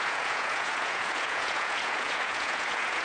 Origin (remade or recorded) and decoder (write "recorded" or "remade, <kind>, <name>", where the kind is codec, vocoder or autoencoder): remade, vocoder, Vocos